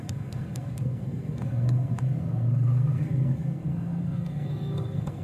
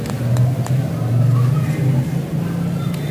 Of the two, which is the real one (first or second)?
second